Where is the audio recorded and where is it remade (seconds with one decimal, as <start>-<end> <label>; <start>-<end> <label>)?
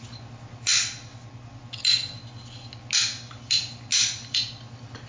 0.0-5.1 recorded